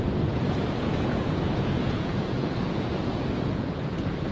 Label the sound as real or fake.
fake